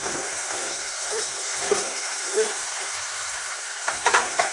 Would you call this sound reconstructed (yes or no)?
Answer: yes